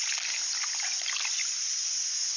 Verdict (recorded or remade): recorded